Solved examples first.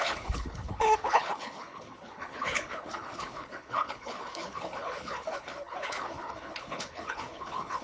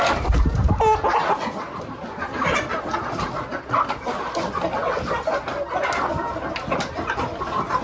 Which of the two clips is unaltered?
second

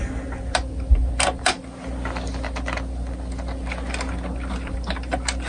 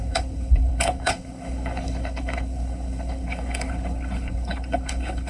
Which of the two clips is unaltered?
first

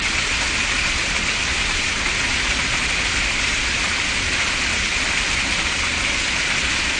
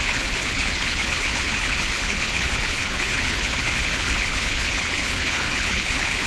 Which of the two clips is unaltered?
first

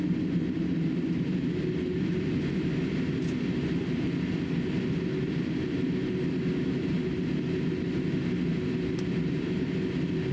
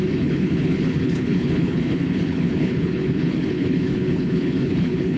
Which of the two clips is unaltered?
first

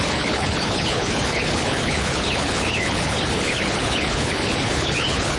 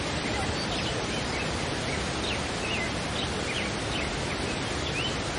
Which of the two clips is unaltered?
second